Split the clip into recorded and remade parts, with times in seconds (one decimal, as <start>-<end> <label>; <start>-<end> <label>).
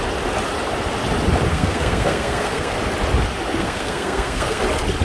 0.0-1.5 recorded; 1.5-2.8 remade; 2.8-3.5 recorded; 3.5-4.6 remade; 4.6-5.0 recorded